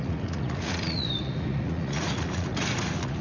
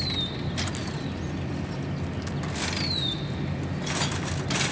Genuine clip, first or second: second